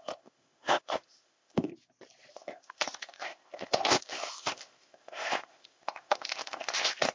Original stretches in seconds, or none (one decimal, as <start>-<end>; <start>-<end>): 1.7-2.3

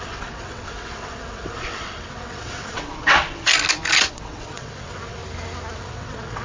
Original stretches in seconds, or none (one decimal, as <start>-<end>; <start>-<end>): 3.5-4.1; 5.2-5.8

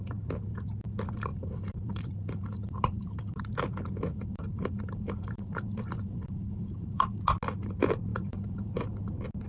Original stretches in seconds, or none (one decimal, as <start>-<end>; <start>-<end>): 0.0-1.3; 3.4-4.1; 7.2-8.1; 9.1-9.5